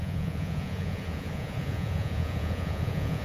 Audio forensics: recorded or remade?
remade